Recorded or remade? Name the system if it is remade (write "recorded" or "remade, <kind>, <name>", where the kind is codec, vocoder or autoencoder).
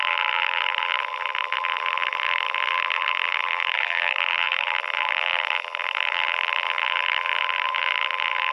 remade, vocoder, BigVGAN v2